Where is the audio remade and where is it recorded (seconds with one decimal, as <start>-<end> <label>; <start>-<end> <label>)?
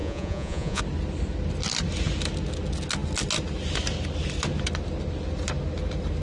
0.0-0.8 remade; 0.8-6.2 recorded